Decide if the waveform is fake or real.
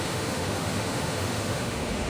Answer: fake